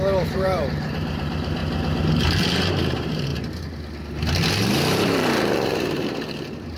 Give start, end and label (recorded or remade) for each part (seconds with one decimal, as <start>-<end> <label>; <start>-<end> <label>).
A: 0.0-1.6 remade; 1.6-2.4 recorded; 2.4-3.3 remade; 3.3-4.5 recorded; 4.5-6.8 remade